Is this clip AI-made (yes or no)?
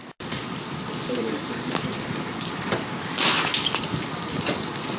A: no